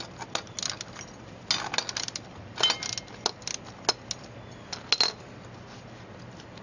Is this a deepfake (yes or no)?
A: no